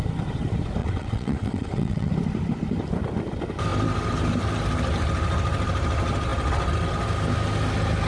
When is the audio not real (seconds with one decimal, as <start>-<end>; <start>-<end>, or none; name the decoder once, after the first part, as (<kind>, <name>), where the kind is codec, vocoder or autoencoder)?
0.8-2.1 (vocoder, WaveNeXt)